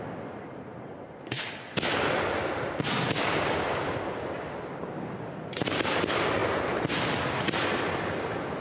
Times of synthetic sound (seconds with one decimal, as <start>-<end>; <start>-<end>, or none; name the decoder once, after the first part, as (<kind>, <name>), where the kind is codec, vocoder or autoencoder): none